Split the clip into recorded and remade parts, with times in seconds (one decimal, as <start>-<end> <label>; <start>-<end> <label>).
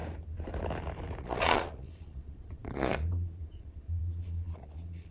0.0-1.2 recorded; 1.2-5.1 remade